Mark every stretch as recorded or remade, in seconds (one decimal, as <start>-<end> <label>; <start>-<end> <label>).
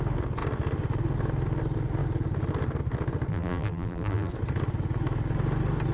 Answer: 0.0-3.3 recorded; 3.3-4.3 remade; 4.3-5.9 recorded